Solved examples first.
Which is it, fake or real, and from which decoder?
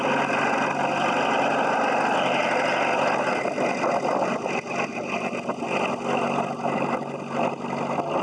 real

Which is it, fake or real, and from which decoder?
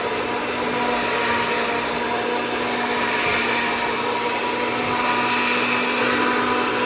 real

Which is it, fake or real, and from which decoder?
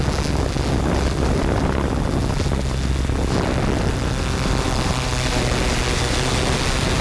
real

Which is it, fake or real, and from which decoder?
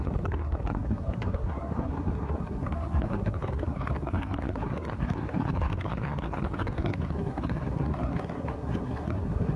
fake, codec, SNAC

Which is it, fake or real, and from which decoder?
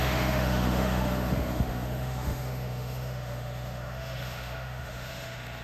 fake, autoencoder, DAC-VAE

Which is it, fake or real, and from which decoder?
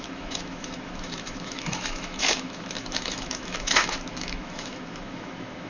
fake, autoencoder, DAC-VAE